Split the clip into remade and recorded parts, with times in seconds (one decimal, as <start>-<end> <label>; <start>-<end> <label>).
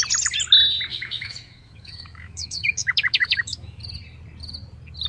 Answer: 0.0-0.9 recorded; 0.9-3.8 remade; 3.8-5.1 recorded